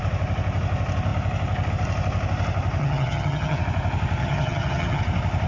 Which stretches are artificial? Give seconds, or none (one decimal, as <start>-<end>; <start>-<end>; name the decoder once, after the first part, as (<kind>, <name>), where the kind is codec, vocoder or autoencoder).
2.8-3.6 (vocoder, HiFi-GAN); 4.2-5.0